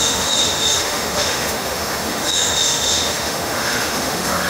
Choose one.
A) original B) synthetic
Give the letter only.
B